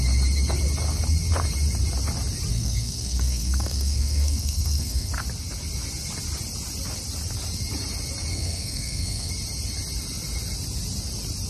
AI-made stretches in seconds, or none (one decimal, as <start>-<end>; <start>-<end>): 2.5-5.1; 8.3-9.3